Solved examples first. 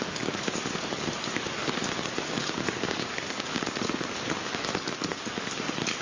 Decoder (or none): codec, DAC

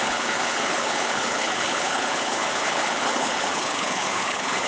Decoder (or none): codec, HILCodec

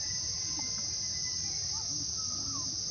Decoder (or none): none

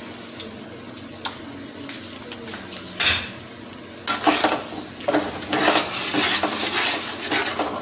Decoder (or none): none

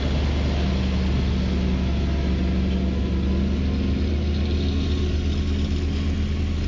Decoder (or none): none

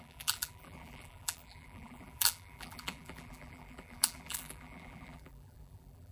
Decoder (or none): vocoder, BigVGAN v2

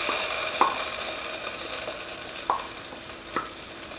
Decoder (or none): none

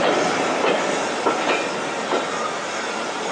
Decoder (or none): none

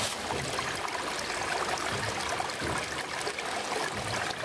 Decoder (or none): none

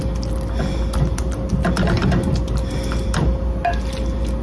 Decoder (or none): none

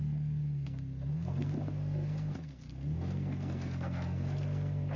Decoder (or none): codec, SNAC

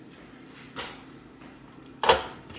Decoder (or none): none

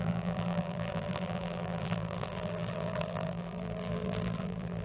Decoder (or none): vocoder, BigVGAN v2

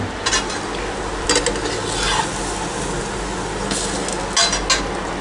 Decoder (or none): none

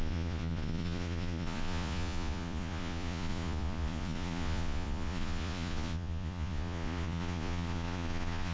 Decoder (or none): vocoder, Vocos